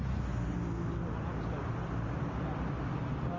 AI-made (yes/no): no